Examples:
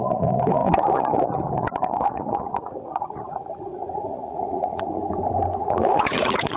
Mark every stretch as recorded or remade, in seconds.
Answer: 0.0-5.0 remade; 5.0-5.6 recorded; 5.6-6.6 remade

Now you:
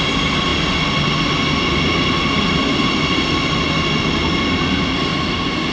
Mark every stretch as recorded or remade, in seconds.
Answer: 0.0-5.7 recorded